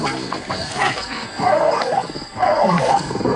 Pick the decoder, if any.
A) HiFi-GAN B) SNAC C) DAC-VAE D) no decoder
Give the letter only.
B